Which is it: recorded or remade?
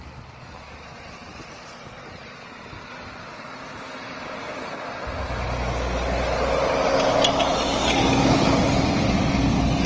recorded